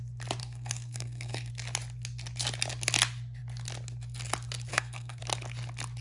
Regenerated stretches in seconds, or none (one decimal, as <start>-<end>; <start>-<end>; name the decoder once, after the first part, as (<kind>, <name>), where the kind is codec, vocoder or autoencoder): 0.4-1.5 (codec, SNAC); 4.7-5.2